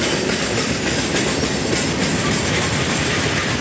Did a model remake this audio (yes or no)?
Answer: no